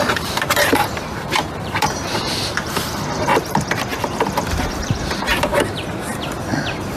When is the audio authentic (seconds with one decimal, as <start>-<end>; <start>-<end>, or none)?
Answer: 3.9-4.5; 6.1-7.0